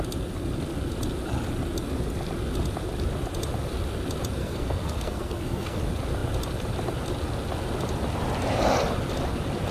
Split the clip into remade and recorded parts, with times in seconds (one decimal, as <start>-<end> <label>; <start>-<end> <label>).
0.0-4.4 recorded; 4.4-5.8 remade; 5.8-9.7 recorded